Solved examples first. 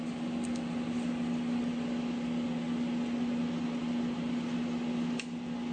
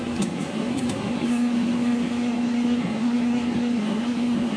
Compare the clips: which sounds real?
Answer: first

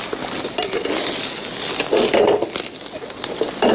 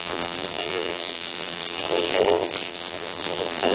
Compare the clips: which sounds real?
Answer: first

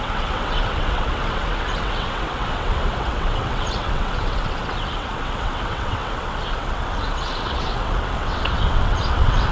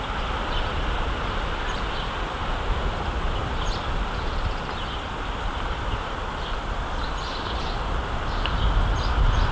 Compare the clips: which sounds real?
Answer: second